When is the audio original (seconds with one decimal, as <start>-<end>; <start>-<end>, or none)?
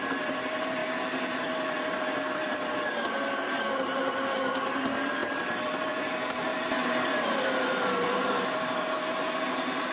none